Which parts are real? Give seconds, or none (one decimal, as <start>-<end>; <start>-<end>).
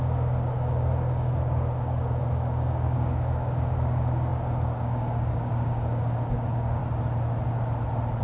6.8-8.2